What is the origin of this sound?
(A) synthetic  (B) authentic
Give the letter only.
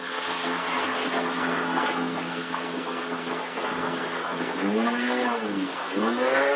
A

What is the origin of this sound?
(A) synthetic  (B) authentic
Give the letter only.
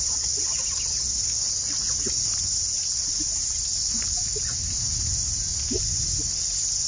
B